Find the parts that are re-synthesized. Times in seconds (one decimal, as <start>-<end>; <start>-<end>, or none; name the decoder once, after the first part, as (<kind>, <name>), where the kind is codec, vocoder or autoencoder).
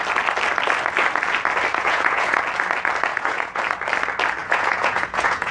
1.7-2.4 (vocoder, Vocos); 3.1-3.6; 4.4-5.5